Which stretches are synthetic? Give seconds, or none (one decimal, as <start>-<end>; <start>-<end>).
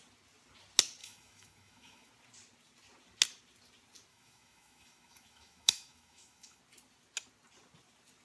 1.0-2.1; 4.1-6.6